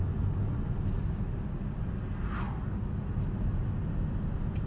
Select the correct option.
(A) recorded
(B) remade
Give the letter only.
A